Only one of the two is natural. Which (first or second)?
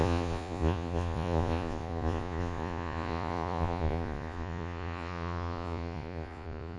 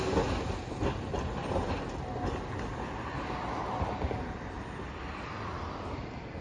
second